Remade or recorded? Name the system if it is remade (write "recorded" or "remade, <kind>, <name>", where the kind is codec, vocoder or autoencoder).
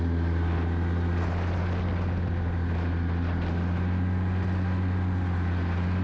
recorded